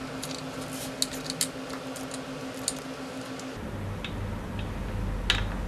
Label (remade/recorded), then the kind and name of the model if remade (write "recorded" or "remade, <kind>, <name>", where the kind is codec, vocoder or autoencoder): recorded